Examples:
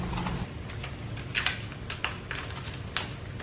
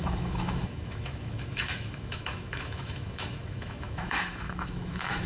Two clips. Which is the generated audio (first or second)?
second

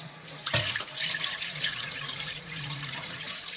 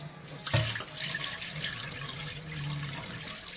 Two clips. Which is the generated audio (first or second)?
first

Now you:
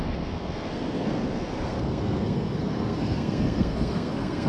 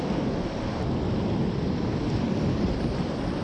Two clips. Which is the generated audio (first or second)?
first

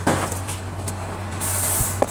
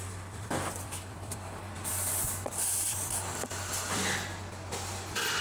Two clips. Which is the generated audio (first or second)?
second